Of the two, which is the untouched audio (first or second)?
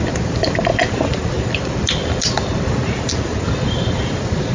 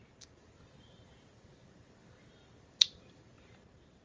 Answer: second